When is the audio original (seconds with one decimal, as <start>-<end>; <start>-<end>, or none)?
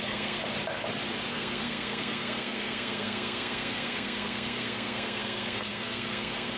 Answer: 0.4-1.3